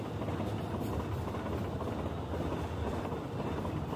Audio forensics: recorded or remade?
recorded